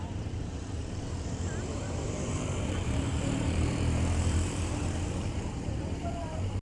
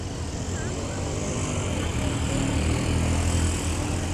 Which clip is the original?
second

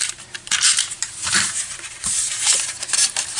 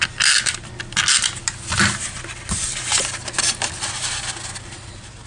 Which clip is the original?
second